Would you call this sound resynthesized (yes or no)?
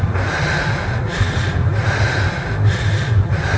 no